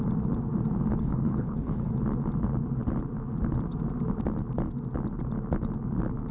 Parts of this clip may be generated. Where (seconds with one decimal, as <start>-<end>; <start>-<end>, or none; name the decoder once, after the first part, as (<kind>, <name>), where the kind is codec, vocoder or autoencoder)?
1.0-1.9 (codec, HILCodec)